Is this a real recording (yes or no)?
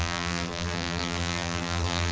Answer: no